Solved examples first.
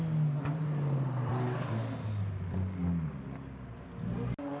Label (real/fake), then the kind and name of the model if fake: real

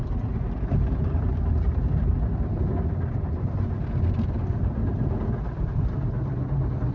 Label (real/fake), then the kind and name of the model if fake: real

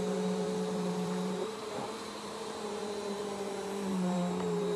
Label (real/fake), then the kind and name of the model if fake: fake, vocoder, BigVGAN v2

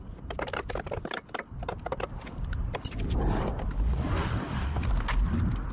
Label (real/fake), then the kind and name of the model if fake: fake, vocoder, BigVGAN v2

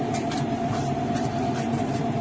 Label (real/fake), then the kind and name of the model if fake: fake, vocoder, BigVGAN v2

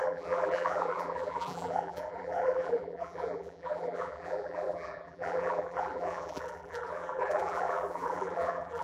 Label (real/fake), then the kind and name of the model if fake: fake, vocoder, BigVGAN v2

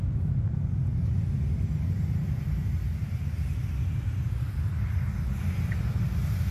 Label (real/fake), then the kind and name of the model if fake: real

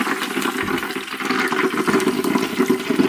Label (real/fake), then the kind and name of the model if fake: real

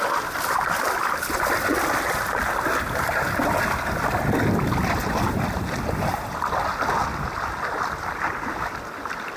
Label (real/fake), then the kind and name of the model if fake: fake, vocoder, BigVGAN v2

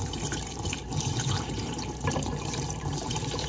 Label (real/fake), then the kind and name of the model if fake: fake, vocoder, BigVGAN v2